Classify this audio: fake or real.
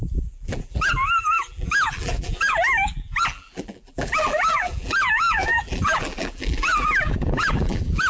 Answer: fake